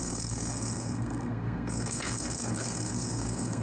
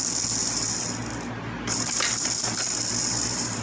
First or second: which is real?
second